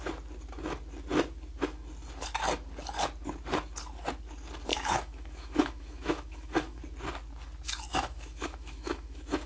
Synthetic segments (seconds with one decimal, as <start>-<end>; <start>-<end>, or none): 4.7-6.8; 7.9-9.5